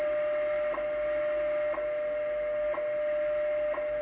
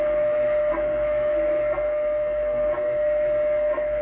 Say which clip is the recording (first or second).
first